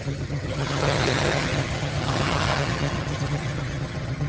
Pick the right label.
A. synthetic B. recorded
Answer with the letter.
A